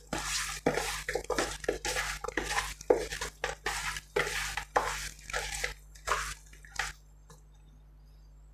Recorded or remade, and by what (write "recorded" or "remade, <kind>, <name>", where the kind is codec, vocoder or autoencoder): recorded